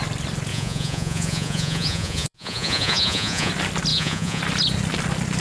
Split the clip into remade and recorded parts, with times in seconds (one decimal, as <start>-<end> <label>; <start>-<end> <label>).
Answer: 0.0-0.5 recorded; 0.5-3.5 remade; 3.5-3.9 recorded; 3.9-4.4 remade; 4.4-5.4 recorded